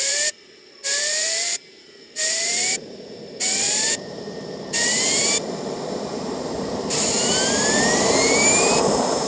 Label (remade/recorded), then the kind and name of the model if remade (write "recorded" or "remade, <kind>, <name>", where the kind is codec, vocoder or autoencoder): remade, vocoder, BigVGAN v2